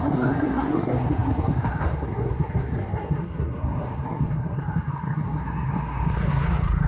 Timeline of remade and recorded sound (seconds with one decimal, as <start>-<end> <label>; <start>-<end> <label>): 0.0-6.9 remade